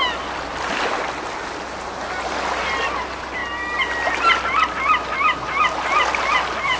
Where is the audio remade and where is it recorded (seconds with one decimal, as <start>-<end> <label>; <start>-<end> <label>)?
0.0-6.8 recorded